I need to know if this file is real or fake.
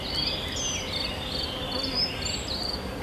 real